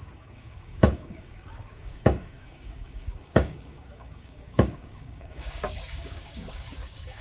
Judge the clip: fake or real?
fake